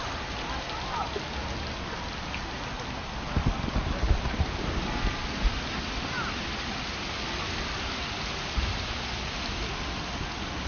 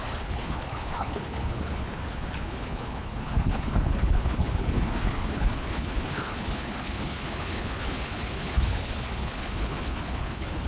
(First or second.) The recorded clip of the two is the first